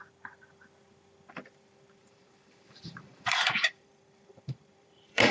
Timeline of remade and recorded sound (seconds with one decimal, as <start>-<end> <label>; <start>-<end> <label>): 0.0-2.0 recorded; 2.0-5.3 remade